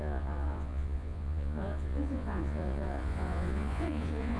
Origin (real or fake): fake